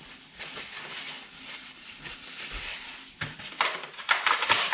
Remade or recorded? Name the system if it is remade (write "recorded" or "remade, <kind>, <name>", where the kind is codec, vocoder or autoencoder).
recorded